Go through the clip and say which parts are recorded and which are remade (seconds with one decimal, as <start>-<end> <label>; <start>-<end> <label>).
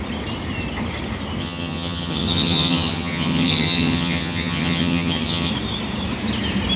0.0-1.4 recorded; 1.4-5.5 remade; 5.5-6.8 recorded